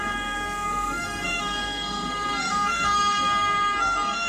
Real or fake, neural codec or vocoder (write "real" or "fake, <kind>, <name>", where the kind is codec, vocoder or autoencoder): fake, codec, SNAC